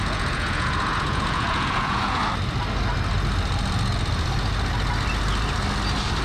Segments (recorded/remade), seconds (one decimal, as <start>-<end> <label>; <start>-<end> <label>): 0.0-2.2 remade; 2.2-6.2 recorded